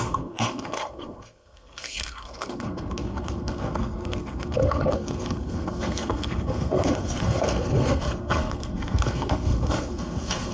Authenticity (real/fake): fake